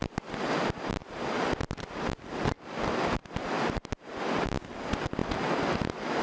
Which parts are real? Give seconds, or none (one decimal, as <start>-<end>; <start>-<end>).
0.0-6.2